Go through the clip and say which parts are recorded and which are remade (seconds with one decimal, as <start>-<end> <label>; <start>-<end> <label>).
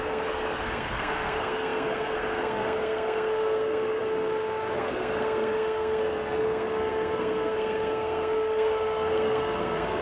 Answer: 0.0-10.0 remade